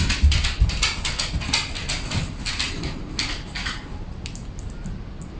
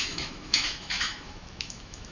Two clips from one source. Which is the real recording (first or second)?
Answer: first